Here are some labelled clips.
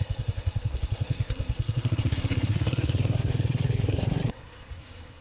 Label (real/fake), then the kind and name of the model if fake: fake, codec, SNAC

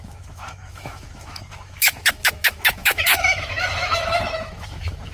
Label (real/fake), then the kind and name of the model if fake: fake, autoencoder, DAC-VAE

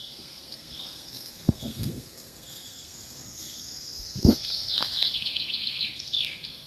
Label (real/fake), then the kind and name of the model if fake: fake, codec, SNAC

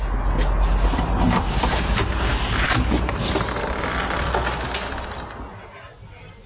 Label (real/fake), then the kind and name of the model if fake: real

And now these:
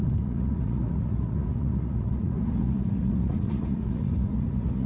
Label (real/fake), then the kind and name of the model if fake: fake, vocoder, Vocos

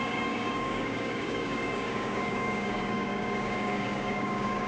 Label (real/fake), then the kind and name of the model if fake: fake, codec, DAC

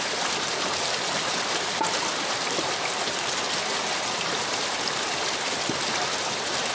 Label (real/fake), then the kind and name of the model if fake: real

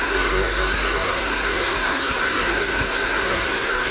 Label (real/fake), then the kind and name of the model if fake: fake, codec, SNAC